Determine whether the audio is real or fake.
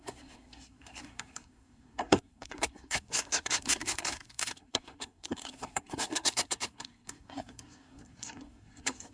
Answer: fake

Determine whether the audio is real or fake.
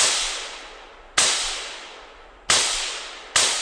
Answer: real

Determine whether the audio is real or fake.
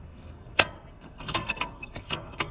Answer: fake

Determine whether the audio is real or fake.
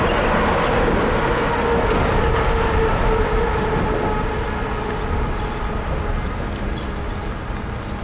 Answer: real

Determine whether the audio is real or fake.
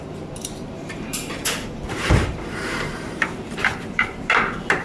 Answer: fake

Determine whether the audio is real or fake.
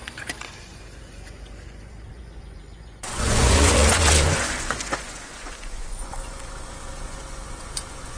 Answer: fake